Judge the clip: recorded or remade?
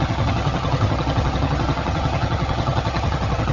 remade